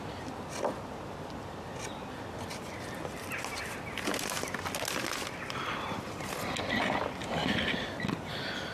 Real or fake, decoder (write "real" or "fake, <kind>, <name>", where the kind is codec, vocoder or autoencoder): real